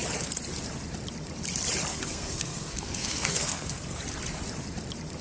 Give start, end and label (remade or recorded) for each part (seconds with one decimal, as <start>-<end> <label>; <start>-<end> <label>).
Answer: 0.0-1.9 recorded; 1.9-4.0 remade; 4.0-5.2 recorded

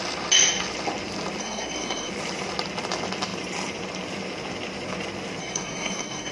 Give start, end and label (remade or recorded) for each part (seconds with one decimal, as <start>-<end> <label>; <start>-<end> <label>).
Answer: 0.0-1.4 recorded; 1.4-2.1 remade; 2.1-5.4 recorded; 5.4-6.3 remade

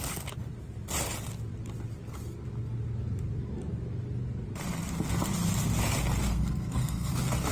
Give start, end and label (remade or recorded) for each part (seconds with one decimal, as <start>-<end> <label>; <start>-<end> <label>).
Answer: 0.0-6.3 recorded; 6.3-7.1 remade; 7.1-7.5 recorded